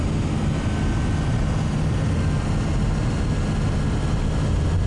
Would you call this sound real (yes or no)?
yes